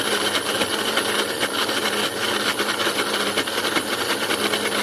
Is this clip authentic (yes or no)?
yes